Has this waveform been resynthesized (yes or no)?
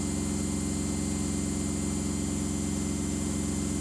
no